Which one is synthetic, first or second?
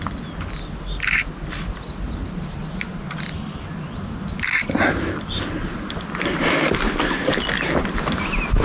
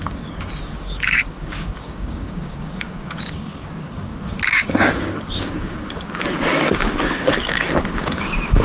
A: second